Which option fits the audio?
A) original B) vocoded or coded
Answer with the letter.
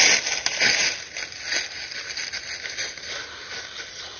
A